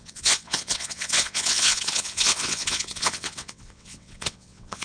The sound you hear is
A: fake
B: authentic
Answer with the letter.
A